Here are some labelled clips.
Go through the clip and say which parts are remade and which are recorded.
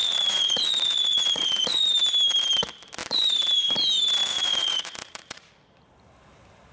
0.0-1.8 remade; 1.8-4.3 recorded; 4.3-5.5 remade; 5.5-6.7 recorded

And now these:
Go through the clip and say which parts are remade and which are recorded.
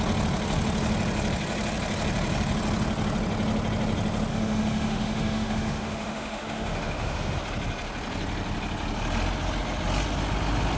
0.0-4.3 recorded; 4.3-7.4 remade; 7.4-10.8 recorded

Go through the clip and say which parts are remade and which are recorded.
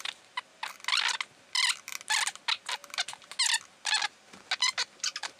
0.0-5.4 recorded